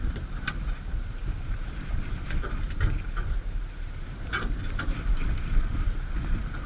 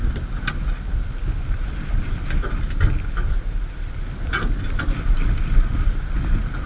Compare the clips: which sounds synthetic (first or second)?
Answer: first